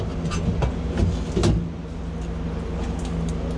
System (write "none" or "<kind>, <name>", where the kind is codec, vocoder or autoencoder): none